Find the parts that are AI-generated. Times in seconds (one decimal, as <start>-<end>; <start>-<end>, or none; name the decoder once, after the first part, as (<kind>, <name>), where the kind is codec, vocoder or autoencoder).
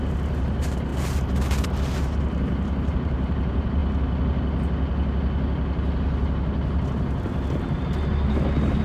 0.0-0.9 (vocoder, BigVGAN v2); 1.6-3.8; 7.8-8.8